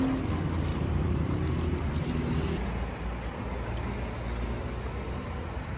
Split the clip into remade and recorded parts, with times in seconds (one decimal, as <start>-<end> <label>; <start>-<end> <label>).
0.0-0.7 recorded; 0.7-2.4 remade; 2.4-5.8 recorded